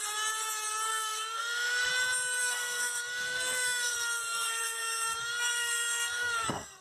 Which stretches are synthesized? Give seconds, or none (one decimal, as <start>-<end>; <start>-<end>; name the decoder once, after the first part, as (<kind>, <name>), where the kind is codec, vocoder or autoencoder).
0.9-1.9 (codec, SNAC); 2.4-6.8